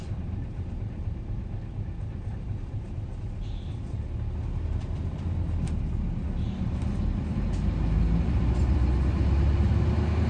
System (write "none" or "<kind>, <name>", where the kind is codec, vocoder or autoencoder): none